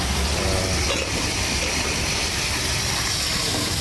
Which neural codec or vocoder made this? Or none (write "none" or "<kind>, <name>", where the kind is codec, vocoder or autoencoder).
none